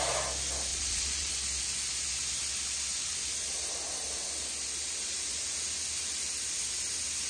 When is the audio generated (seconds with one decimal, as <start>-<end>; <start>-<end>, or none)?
0.7-1.3